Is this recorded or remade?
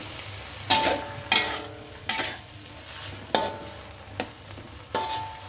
recorded